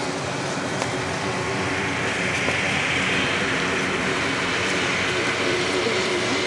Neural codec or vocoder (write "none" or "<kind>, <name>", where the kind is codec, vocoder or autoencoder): vocoder, BigVGAN v2